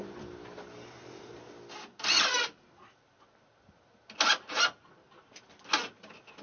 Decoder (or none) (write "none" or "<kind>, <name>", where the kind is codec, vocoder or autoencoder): none